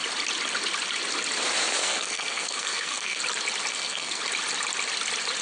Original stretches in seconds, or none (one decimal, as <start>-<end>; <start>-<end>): 0.0-1.8; 3.2-3.7; 4.2-5.4